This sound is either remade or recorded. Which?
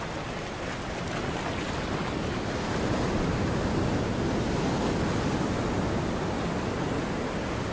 recorded